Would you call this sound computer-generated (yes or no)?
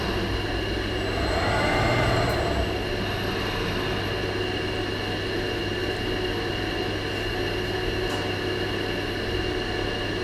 no